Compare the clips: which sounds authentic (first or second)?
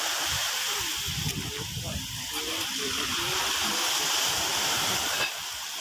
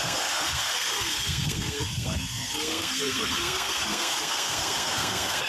first